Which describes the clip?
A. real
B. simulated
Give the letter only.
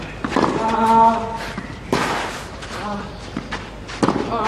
A